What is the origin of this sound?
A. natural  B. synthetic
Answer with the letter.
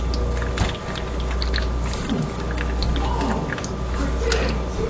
A